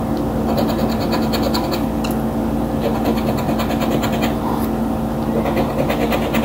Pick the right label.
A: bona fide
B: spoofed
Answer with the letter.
A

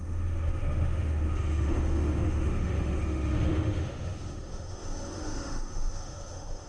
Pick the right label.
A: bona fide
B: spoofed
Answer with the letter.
B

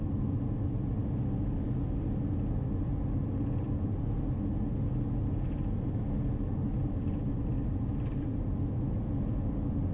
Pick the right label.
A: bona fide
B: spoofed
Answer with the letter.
A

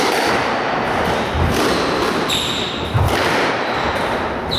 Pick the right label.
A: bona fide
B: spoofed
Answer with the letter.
A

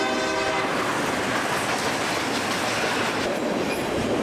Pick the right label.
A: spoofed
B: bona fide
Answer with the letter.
B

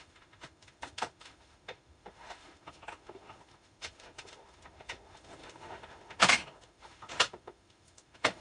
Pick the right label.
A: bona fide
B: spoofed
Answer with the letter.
B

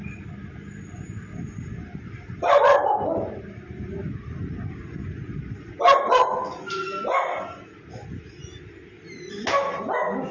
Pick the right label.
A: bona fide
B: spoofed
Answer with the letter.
A